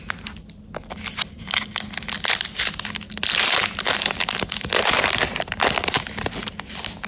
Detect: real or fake real